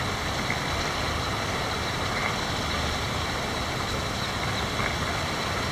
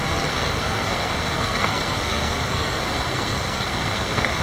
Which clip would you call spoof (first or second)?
second